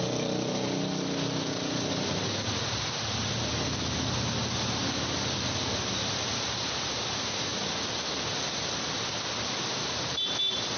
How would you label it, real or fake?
real